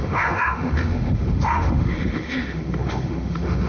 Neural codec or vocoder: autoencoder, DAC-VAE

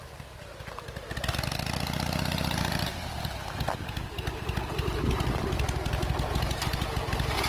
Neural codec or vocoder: none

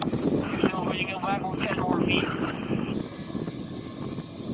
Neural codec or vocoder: none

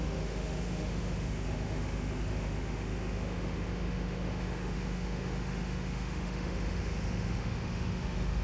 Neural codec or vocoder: autoencoder, DAC-VAE